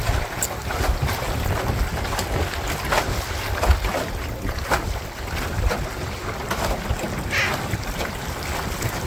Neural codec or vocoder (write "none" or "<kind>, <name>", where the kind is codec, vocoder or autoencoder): none